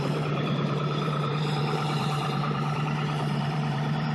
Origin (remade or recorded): remade